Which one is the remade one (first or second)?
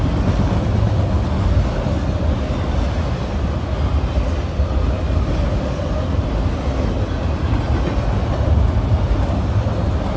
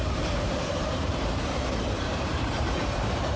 second